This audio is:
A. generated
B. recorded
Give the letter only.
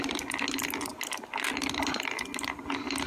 B